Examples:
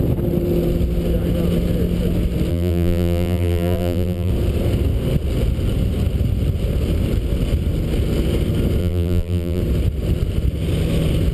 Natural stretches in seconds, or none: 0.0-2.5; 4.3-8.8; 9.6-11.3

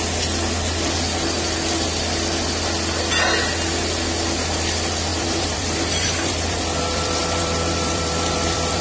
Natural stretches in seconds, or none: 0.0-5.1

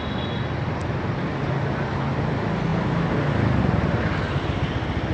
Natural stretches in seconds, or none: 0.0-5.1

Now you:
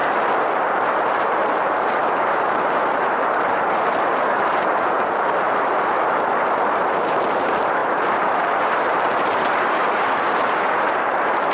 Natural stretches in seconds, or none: 0.0-0.7